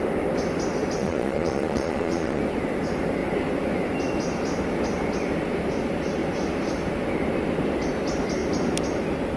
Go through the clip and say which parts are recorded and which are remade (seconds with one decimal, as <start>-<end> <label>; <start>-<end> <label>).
0.0-1.0 recorded; 1.0-2.4 remade; 2.4-9.4 recorded